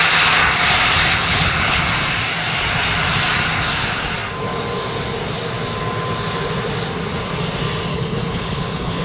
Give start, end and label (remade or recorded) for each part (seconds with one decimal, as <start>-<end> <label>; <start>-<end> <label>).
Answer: 0.0-1.1 recorded; 1.1-1.8 remade; 1.8-7.9 recorded; 7.9-9.0 remade